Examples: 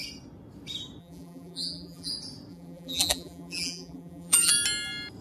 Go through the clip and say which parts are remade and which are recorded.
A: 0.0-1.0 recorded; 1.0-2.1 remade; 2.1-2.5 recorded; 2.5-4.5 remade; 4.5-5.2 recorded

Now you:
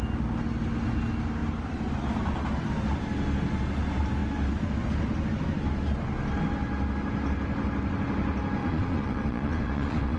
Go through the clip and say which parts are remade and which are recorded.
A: 0.0-8.6 recorded; 8.6-10.2 remade

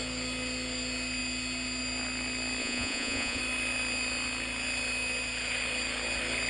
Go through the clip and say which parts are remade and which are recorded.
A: 0.0-2.6 recorded; 2.6-3.4 remade; 3.4-6.5 recorded

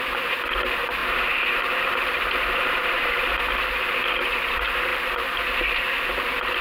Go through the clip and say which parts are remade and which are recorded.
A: 0.0-1.0 recorded; 1.0-3.3 remade; 3.3-6.6 recorded

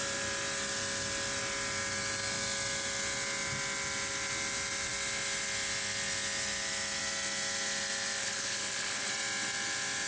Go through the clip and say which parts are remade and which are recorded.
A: 0.0-8.2 recorded; 8.2-9.1 remade; 9.1-10.1 recorded

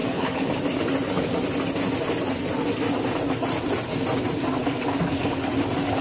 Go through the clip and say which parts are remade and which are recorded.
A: 0.0-0.5 remade; 0.5-4.6 recorded; 4.6-5.5 remade; 5.5-6.0 recorded